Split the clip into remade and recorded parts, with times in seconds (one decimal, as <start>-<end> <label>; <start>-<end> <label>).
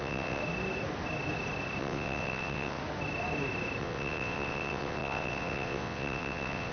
0.0-0.4 remade; 0.4-1.8 recorded; 1.8-2.8 remade; 2.8-3.8 recorded; 3.8-6.7 remade